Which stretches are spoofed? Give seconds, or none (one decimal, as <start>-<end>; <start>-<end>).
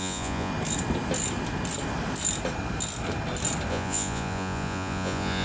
0.0-0.5; 3.7-5.4